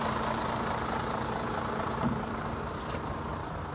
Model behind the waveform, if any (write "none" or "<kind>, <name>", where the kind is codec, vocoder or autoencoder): vocoder, BigVGAN v2